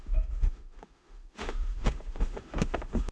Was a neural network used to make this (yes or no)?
yes